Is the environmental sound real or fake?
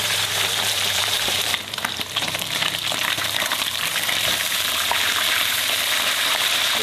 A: fake